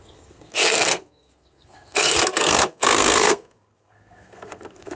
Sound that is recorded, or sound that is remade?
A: remade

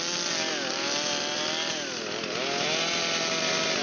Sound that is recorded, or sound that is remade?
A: recorded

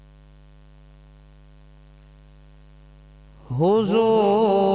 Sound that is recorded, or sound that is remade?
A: recorded